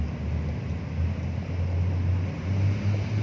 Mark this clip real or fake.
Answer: real